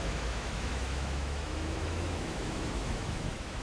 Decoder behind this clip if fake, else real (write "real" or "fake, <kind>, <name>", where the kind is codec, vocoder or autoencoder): fake, autoencoder, DAC-VAE